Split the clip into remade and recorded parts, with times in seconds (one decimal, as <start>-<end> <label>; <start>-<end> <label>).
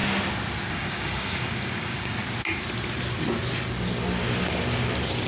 0.0-0.7 recorded; 0.7-2.2 remade; 2.2-5.3 recorded